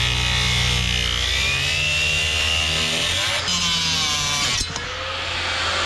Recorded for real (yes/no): yes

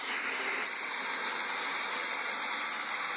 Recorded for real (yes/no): yes